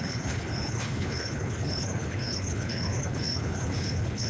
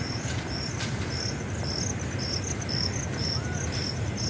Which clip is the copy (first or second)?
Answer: first